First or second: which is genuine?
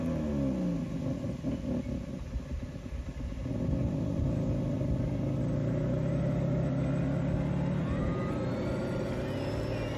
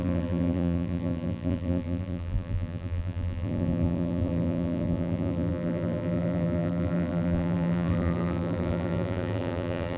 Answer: first